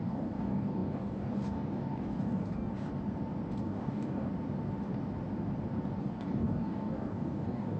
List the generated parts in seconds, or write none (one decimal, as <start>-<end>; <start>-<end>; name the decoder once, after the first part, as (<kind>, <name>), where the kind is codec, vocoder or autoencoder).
0.0-2.9 (codec, DAC); 3.6-4.3; 6.0-7.8